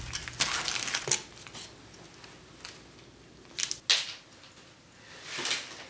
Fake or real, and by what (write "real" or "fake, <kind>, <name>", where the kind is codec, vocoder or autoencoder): real